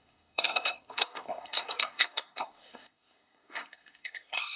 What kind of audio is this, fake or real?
fake